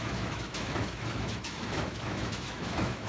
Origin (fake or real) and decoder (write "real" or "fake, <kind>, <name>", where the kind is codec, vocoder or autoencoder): fake, autoencoder, DAC-VAE